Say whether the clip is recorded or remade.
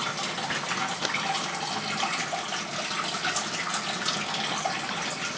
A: recorded